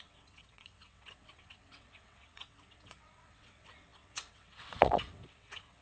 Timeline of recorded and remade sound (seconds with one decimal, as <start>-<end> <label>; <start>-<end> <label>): 0.0-5.8 remade